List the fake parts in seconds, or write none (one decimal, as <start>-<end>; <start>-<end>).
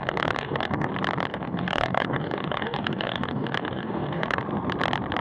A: 0.0-0.9; 1.3-4.4